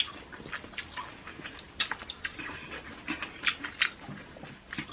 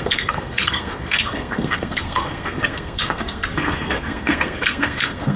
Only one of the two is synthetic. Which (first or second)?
second